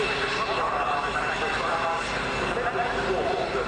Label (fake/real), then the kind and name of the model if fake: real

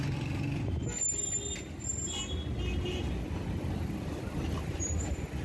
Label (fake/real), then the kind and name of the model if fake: real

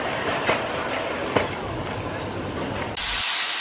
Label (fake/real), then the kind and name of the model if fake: real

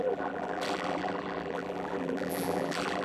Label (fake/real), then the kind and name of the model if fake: fake, vocoder, BigVGAN v2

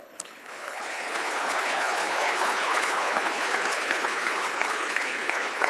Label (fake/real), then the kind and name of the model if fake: fake, codec, HILCodec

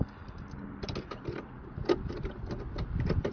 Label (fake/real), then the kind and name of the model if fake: real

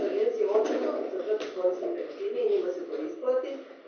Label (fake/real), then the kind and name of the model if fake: real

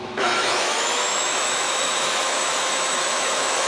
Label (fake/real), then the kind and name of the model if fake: fake, autoencoder, DAC-VAE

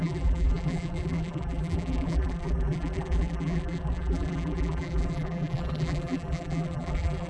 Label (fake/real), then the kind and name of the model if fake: fake, vocoder, BigVGAN v2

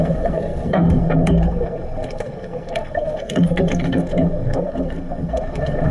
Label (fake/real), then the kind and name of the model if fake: fake, codec, SNAC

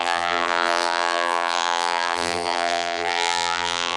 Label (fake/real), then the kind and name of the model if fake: fake, vocoder, BigVGAN v2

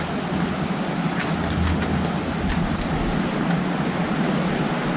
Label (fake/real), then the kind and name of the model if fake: real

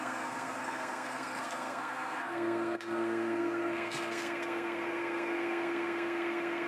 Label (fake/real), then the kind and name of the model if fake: fake, codec, SNAC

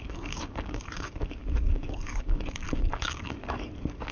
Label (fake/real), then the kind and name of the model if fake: fake, codec, DAC